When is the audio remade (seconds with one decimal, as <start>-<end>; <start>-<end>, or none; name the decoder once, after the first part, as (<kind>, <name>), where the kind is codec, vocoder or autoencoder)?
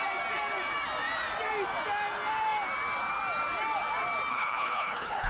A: 4.3-5.3 (codec, HILCodec)